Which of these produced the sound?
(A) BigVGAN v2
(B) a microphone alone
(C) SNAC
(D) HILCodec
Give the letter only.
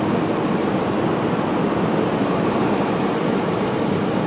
B